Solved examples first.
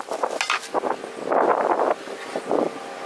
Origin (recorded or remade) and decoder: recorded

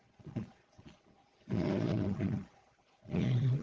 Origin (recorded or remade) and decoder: remade, vocoder, Vocos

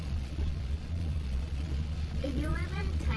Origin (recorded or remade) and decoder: remade, vocoder, Vocos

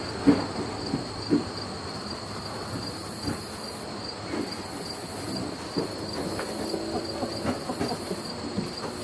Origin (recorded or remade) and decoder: recorded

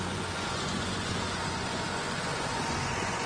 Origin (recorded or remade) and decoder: remade, vocoder, Vocos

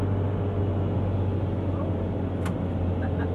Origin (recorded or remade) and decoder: recorded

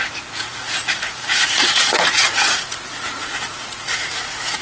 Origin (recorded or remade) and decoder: remade, vocoder, Vocos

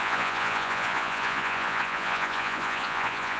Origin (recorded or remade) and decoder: remade, vocoder, Vocos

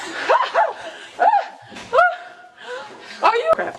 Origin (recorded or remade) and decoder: recorded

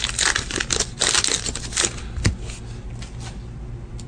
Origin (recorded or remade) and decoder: recorded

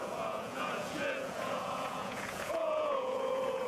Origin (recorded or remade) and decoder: remade, vocoder, Vocos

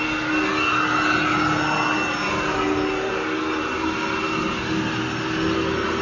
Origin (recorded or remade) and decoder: recorded